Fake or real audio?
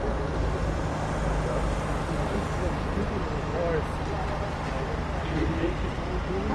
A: real